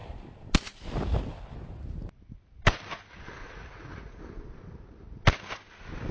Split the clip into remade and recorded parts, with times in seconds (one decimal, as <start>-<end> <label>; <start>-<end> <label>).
0.0-3.4 recorded; 3.4-4.2 remade; 4.2-6.1 recorded